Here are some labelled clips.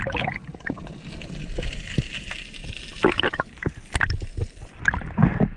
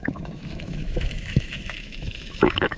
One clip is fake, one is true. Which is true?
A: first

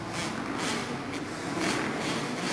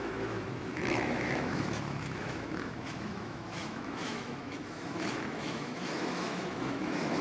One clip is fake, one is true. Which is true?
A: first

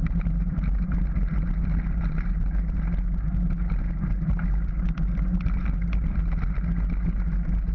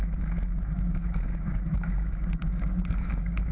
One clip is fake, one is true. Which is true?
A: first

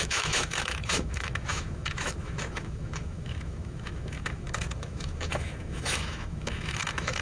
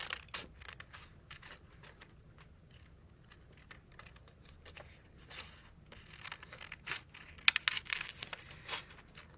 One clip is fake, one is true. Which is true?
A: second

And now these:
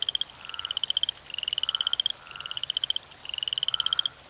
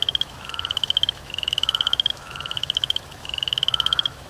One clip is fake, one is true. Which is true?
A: first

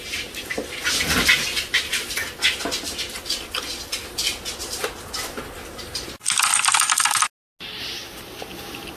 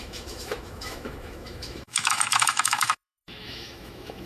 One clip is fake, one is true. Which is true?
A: first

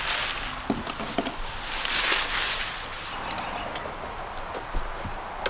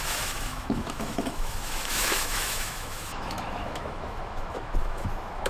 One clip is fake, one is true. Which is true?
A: first